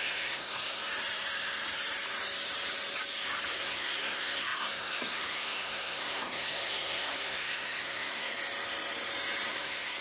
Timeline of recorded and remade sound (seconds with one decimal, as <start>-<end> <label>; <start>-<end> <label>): 0.0-0.8 remade; 0.8-3.5 recorded; 3.5-8.3 remade; 8.3-9.5 recorded; 9.5-10.0 remade